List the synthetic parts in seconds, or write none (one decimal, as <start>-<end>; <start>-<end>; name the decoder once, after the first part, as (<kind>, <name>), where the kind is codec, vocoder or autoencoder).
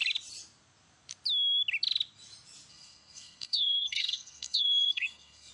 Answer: 2.7-5.5 (codec, SNAC)